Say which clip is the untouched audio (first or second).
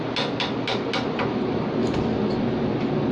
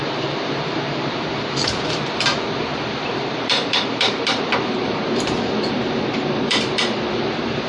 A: first